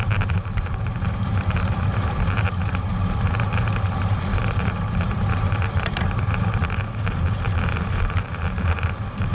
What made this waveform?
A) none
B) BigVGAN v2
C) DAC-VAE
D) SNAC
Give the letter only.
B